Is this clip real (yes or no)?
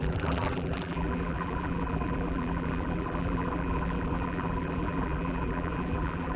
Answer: no